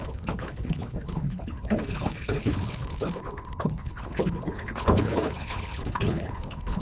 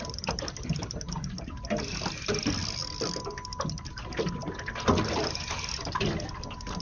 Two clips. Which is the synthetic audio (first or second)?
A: first